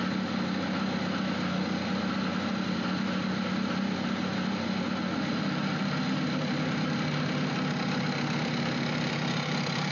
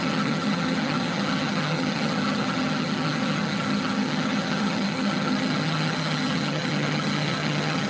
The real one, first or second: first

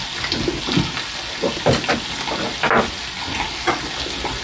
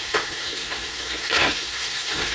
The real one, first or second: first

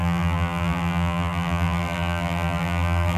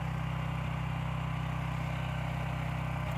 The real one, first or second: second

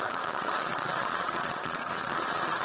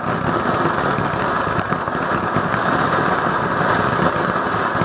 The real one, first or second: second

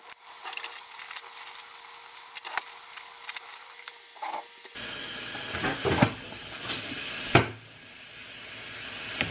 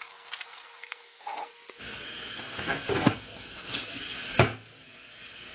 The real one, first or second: first